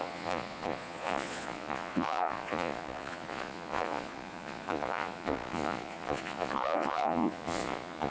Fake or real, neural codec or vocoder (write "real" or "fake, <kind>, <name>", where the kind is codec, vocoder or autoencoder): fake, vocoder, Vocos